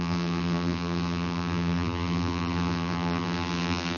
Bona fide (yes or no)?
no